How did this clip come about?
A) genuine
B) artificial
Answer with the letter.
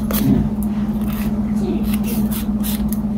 A